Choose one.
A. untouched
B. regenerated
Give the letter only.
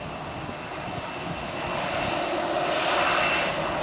A